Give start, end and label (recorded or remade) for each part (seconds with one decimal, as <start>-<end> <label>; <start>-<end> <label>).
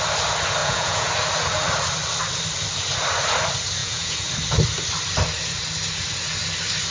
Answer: 0.0-0.6 recorded; 0.6-1.1 remade; 1.1-3.8 recorded; 3.8-4.3 remade; 4.3-6.9 recorded